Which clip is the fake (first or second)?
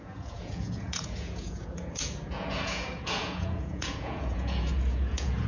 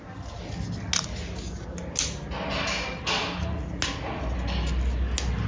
first